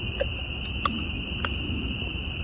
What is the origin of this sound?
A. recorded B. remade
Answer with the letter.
A